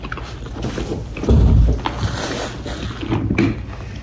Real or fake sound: real